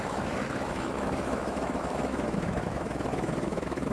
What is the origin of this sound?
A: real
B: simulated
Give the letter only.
B